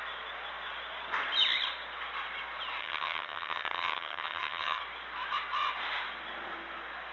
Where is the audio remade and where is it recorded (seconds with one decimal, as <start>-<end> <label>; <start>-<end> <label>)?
0.0-2.8 recorded; 2.8-4.8 remade; 4.8-7.1 recorded